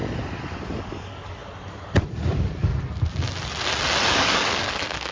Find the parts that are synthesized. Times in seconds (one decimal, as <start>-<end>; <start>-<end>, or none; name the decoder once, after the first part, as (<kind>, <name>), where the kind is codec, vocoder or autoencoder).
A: 0.6-1.4 (codec, DAC); 2.3-2.7; 4.1-5.1